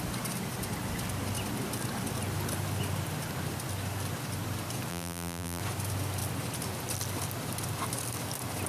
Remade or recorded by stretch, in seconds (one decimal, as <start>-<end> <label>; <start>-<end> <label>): 0.0-4.9 recorded; 4.9-5.6 remade; 5.6-8.7 recorded